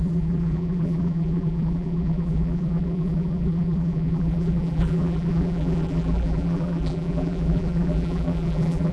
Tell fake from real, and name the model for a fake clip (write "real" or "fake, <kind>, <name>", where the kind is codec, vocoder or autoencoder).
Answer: fake, vocoder, BigVGAN v2